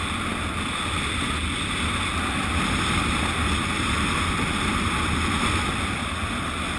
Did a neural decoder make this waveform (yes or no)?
no